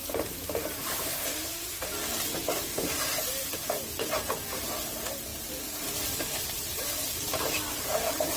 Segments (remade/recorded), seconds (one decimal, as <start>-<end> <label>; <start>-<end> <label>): 0.0-1.7 remade; 1.7-2.1 recorded; 2.1-3.8 remade; 3.8-5.3 recorded; 5.3-6.7 remade; 6.7-8.4 recorded